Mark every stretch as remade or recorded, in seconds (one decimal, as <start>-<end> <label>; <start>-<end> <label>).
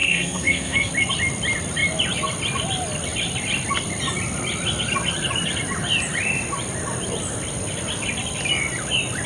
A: 0.0-0.9 remade; 0.9-9.3 recorded